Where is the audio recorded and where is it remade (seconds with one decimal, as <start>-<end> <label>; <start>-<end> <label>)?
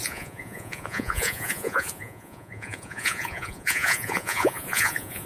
0.0-5.2 remade